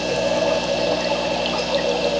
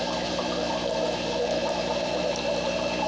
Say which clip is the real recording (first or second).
first